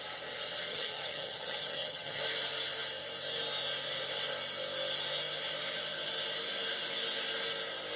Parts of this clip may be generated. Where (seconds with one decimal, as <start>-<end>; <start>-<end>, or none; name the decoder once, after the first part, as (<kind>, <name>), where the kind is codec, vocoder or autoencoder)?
0.7-2.2 (vocoder, HiFi-GAN)